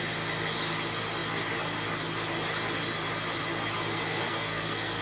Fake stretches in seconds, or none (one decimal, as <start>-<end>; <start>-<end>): 3.9-5.0